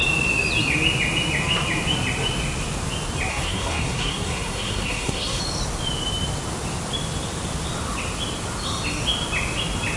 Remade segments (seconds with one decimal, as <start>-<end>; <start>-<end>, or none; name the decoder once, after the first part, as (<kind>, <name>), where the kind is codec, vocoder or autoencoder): 3.3-5.4 (codec, SNAC)